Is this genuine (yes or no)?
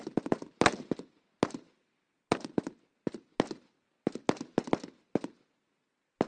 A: yes